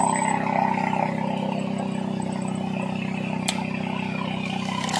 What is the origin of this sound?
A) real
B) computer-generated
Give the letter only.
A